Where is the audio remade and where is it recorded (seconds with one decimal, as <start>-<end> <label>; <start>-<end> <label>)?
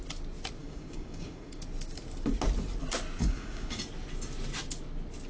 0.0-0.6 recorded; 0.6-1.6 remade; 1.6-3.2 recorded; 3.2-3.8 remade; 3.8-5.3 recorded